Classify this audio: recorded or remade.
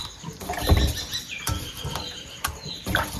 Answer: recorded